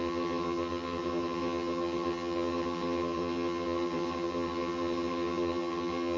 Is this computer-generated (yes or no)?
yes